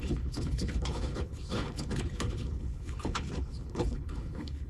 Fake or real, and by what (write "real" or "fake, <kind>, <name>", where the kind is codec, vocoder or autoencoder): fake, codec, HILCodec